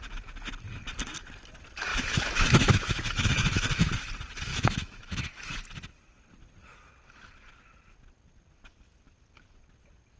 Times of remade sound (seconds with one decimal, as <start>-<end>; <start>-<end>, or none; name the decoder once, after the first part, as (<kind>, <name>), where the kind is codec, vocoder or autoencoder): 1.9-3.9 (autoencoder, DAC-VAE); 4.5-5.6